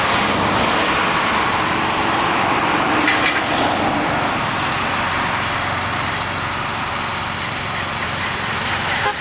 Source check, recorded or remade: recorded